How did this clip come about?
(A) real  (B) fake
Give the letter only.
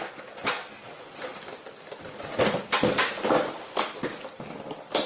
A